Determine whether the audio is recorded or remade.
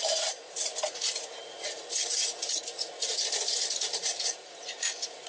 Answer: remade